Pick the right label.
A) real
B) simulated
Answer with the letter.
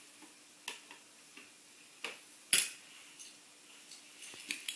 A